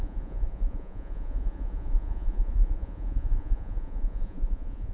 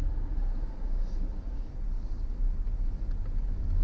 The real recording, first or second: second